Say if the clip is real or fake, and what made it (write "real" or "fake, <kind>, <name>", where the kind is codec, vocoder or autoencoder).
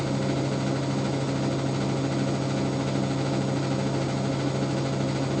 real